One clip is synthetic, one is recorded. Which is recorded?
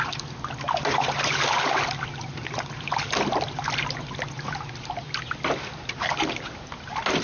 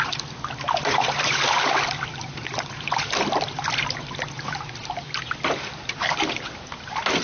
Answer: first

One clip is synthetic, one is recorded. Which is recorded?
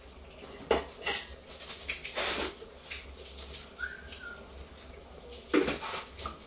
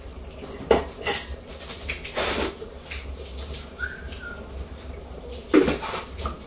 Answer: first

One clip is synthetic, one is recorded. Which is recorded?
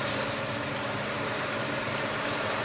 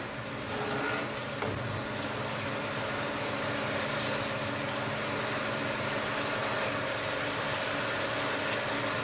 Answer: second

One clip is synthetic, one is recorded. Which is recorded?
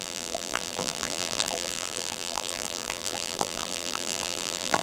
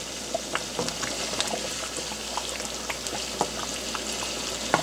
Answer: second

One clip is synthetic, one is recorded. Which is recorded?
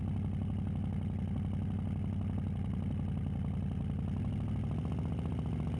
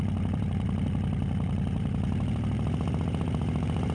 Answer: first